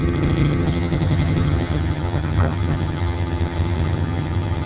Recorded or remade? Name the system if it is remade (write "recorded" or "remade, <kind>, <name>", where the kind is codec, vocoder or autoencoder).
remade, vocoder, HiFi-GAN